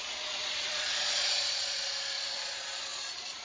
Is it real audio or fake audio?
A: fake